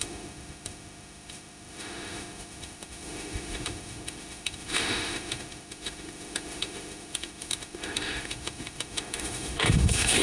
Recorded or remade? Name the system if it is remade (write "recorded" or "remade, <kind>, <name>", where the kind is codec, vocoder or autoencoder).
remade, autoencoder, DAC-VAE